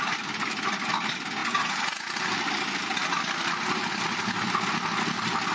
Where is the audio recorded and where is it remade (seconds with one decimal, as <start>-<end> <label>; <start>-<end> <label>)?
0.0-5.5 recorded